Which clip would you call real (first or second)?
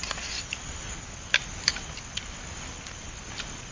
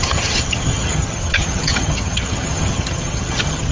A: first